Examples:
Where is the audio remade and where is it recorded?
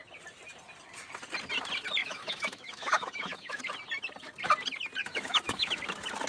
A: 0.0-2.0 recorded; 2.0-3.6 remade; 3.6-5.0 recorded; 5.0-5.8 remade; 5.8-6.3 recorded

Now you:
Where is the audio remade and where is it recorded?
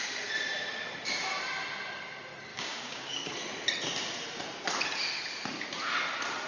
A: 0.0-2.5 recorded; 2.5-3.3 remade; 3.3-6.5 recorded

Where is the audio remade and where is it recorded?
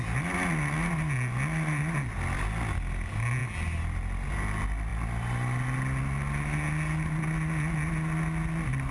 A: 0.0-8.9 recorded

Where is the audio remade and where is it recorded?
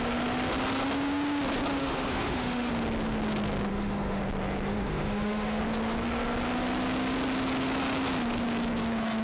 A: 0.0-1.8 recorded; 1.8-2.7 remade; 2.7-3.7 recorded; 3.7-4.2 remade; 4.2-4.7 recorded; 4.7-5.6 remade; 5.6-9.2 recorded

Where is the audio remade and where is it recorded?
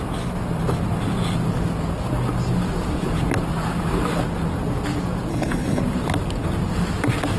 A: 0.0-5.3 recorded; 5.3-5.8 remade; 5.8-7.4 recorded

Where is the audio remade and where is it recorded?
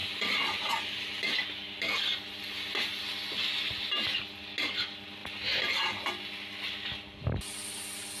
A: 0.0-8.2 recorded